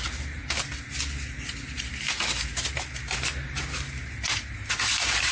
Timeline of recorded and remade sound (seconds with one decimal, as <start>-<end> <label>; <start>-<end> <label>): 0.0-5.3 recorded